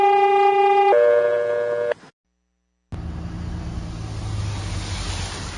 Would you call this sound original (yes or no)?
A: yes